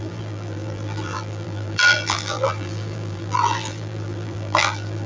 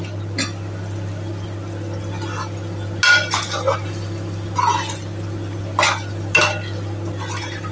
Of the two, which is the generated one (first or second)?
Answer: first